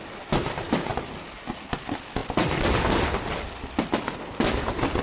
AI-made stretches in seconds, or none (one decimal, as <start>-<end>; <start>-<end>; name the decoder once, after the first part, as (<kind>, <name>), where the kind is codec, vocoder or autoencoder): none